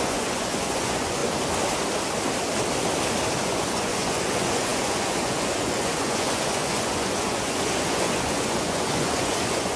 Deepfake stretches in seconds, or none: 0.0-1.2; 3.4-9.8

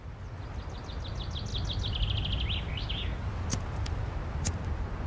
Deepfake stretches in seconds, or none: none

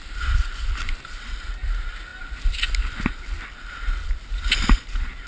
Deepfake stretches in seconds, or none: none